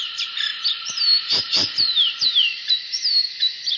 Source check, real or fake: fake